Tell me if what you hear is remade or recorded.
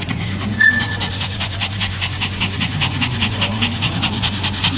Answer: remade